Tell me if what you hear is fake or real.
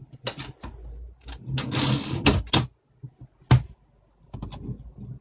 real